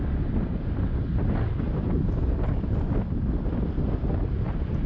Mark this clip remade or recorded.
recorded